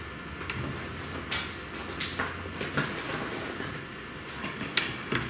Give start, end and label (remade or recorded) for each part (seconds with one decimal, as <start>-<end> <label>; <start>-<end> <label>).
0.0-4.4 recorded; 4.4-5.3 remade